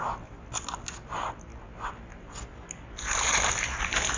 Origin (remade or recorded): recorded